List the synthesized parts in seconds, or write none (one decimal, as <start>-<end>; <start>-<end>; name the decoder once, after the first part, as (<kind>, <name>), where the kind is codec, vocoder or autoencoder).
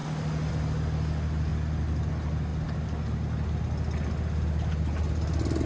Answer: none